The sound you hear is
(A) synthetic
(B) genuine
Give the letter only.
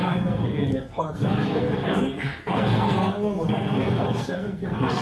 A